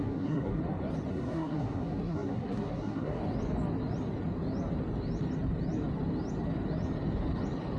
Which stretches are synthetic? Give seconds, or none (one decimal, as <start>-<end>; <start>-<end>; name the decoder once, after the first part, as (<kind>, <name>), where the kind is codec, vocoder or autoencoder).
0.0-0.6 (codec, SNAC); 1.1-3.2

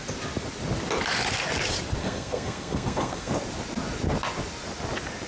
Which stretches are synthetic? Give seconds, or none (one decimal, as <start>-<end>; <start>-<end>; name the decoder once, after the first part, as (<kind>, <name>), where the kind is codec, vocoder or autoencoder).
2.0-3.3 (codec, SNAC)

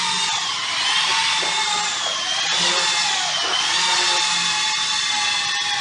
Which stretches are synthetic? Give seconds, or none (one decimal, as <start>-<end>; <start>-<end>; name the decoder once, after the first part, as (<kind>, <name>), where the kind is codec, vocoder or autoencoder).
none

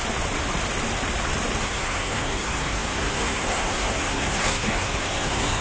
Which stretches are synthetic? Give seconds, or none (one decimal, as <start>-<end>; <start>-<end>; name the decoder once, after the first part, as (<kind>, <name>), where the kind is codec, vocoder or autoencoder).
1.6-5.6 (codec, SNAC)

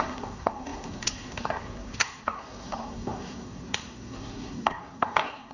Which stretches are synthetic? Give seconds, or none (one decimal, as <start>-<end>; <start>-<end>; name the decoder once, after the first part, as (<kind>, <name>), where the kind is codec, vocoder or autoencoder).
0.0-5.5 (codec, SNAC)